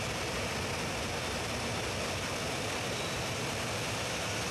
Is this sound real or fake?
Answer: fake